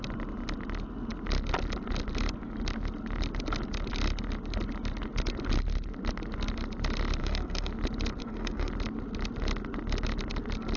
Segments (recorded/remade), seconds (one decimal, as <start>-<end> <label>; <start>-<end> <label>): 0.0-7.2 recorded; 7.2-7.7 remade; 7.7-8.2 recorded; 8.2-8.7 remade; 8.7-10.8 recorded